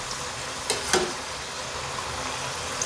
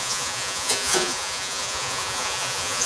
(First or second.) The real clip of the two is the first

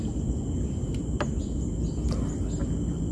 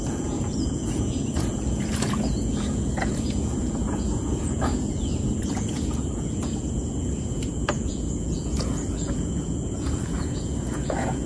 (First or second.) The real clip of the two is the first